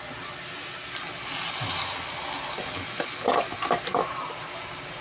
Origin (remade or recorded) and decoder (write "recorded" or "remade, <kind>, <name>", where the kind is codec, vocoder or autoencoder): recorded